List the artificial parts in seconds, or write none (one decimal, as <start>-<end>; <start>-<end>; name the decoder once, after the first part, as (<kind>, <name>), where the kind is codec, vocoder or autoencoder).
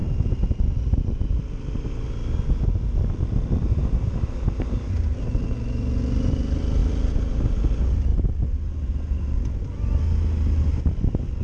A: none